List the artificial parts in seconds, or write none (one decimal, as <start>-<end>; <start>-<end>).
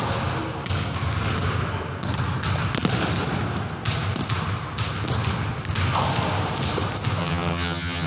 7.2-8.1